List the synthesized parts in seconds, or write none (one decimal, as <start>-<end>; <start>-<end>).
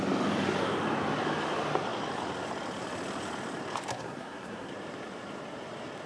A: 3.9-4.7